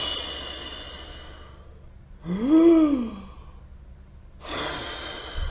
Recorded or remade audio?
recorded